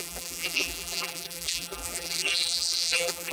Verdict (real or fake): fake